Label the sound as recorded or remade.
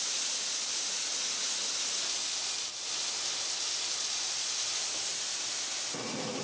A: recorded